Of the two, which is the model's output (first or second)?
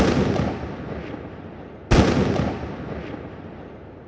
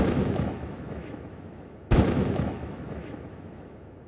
second